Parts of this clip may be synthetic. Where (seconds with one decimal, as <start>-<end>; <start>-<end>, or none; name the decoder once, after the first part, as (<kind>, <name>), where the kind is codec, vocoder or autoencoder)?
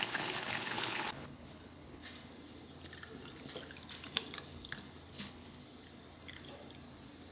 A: 0.0-2.0 (codec, HILCodec); 5.1-5.6